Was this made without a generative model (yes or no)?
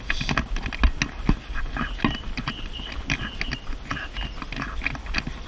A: yes